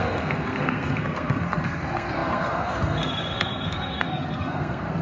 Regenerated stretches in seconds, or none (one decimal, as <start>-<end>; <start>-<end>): 0.0-5.0